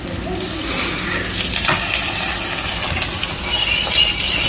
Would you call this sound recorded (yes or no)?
yes